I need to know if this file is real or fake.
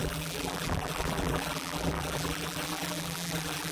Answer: fake